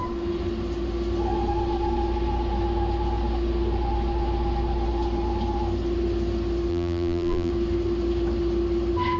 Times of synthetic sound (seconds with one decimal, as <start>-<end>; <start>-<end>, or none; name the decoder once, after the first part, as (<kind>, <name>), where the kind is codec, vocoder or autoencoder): 6.7-7.5 (vocoder, BigVGAN v2)